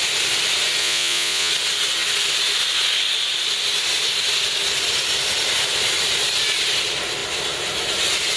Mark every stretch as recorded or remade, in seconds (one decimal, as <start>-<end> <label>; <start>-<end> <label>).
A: 0.0-0.8 recorded; 0.8-1.5 remade; 1.5-8.4 recorded